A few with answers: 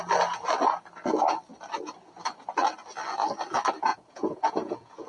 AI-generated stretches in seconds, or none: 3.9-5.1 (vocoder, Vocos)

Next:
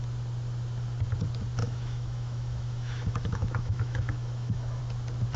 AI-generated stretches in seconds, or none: 1.6-4.8 (autoencoder, DAC-VAE)